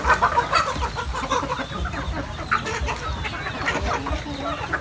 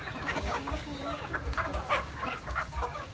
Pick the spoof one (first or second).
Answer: second